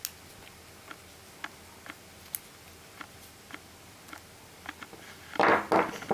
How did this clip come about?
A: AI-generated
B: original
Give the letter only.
B